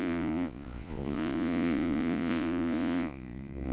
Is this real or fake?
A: fake